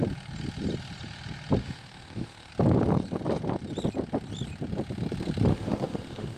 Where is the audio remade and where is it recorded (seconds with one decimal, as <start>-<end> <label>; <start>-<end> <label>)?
0.0-1.6 recorded; 1.6-2.5 remade; 2.5-5.5 recorded; 5.5-6.4 remade